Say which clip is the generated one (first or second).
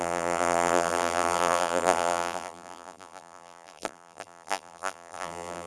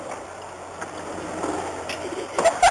first